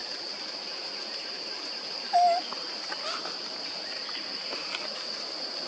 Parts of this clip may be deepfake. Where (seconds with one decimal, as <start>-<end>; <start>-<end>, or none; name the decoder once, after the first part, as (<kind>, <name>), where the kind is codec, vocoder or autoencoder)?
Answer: none